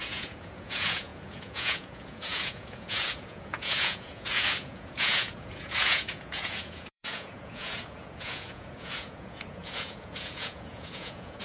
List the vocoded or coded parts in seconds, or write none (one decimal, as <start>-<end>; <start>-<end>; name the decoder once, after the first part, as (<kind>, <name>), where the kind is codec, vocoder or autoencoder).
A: 0.0-11.4 (vocoder, Vocos)